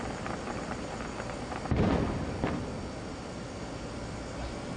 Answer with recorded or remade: recorded